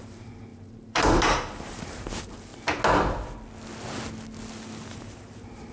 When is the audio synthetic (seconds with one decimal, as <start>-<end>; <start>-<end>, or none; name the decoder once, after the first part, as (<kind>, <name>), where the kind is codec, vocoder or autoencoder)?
0.0-2.5 (vocoder, BigVGAN v2); 4.9-5.7